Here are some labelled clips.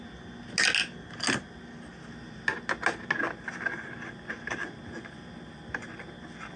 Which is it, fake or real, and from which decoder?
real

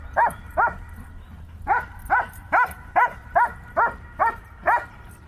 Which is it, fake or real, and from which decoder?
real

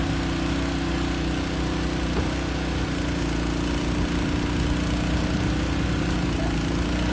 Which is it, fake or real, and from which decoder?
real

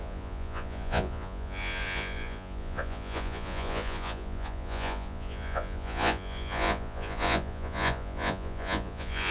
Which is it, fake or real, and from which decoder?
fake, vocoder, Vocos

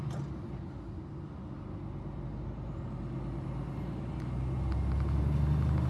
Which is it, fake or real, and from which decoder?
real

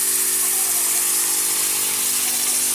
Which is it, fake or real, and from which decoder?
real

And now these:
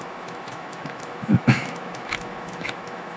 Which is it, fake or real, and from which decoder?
fake, autoencoder, DAC-VAE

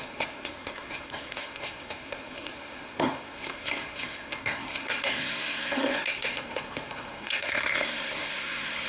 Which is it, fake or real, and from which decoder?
fake, codec, SNAC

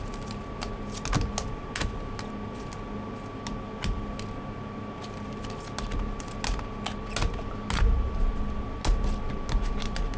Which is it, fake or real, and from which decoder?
real